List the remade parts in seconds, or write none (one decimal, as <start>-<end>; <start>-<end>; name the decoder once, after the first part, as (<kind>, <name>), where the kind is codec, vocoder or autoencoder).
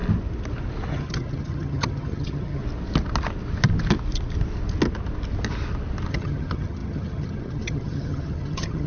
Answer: 0.9-2.6 (vocoder, HiFi-GAN); 6.1-8.9